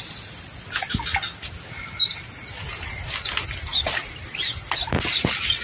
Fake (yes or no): no